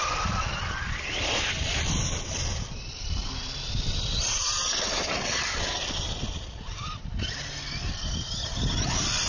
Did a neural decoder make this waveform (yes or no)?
no